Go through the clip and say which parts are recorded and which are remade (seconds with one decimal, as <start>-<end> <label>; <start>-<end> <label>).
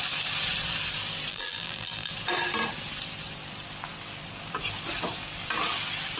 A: 0.0-1.3 recorded; 1.3-2.1 remade; 2.1-6.2 recorded